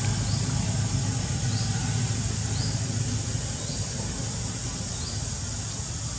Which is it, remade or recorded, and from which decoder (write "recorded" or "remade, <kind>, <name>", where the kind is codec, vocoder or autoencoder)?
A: recorded